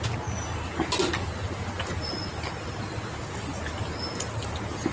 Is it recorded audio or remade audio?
recorded